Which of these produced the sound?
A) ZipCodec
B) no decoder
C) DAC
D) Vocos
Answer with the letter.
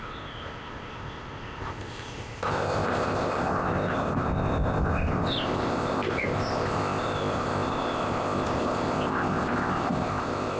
A